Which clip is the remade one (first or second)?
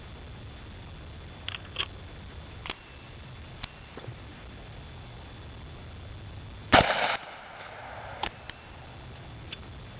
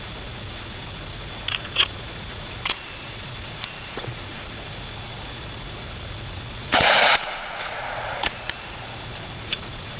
second